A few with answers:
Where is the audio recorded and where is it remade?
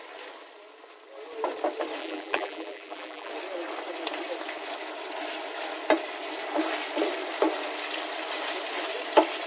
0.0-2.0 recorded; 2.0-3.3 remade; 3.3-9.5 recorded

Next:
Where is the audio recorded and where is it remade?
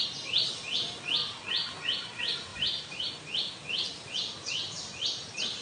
0.0-2.5 recorded; 2.5-3.1 remade; 3.1-5.6 recorded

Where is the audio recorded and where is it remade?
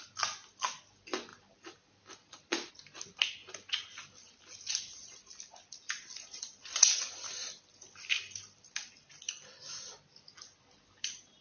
0.0-1.3 recorded; 1.3-2.7 remade; 2.7-3.4 recorded; 3.4-4.4 remade; 4.4-5.0 recorded; 5.0-9.1 remade; 9.1-11.4 recorded